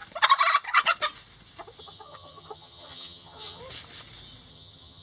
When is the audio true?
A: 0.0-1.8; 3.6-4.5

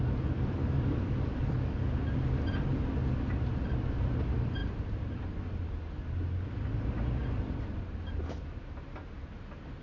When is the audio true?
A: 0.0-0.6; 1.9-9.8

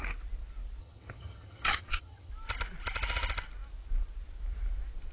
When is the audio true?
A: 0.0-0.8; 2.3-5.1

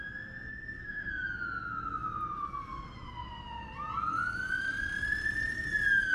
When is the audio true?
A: 0.0-0.5; 1.1-6.1

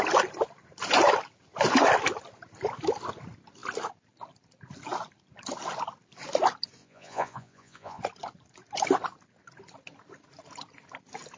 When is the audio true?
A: 0.0-6.8; 8.0-11.4

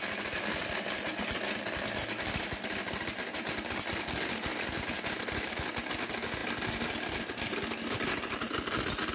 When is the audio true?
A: 0.0-9.1